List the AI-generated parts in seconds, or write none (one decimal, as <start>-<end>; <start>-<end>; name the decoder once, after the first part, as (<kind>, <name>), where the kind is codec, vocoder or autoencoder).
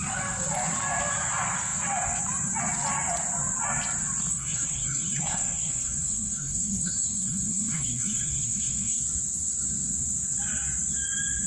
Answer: 4.3-9.0 (codec, SNAC)